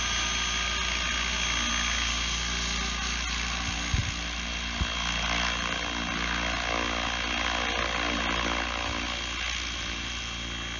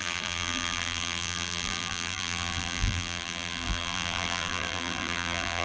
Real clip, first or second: first